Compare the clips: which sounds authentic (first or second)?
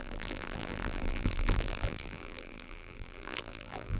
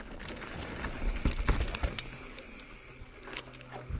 second